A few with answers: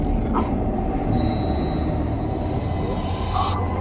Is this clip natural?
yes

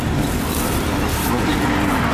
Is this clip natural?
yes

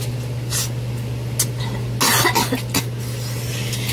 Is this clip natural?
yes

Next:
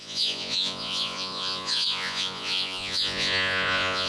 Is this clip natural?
no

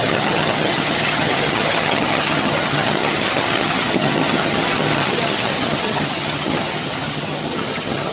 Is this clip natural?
no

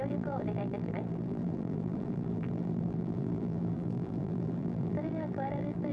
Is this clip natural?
no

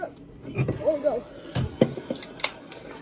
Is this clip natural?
yes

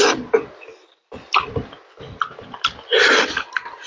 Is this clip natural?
yes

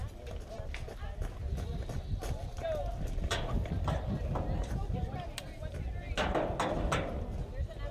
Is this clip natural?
yes